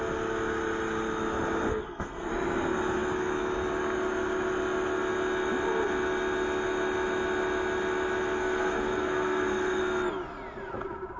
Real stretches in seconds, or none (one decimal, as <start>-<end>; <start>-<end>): 0.0-1.7; 2.3-8.4; 9.8-11.2